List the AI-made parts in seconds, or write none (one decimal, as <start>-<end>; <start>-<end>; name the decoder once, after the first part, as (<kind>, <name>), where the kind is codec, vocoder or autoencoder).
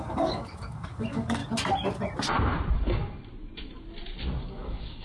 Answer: 0.0-1.4 (codec, DAC); 4.4-5.0